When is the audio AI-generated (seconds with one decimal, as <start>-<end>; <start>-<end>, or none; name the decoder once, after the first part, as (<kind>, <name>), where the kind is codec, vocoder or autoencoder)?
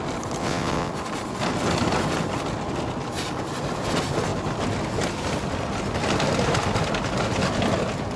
0.4-0.9 (vocoder, WaveNeXt)